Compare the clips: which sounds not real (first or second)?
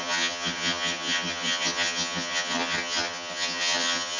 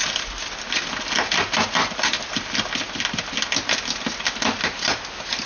first